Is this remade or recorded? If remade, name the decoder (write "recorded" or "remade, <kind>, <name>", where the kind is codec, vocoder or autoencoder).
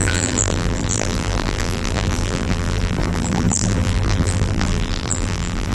remade, vocoder, BigVGAN v2